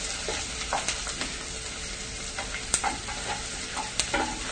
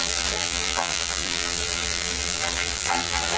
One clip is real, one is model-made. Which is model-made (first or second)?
second